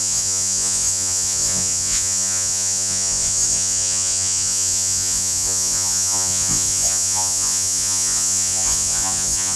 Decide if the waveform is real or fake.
fake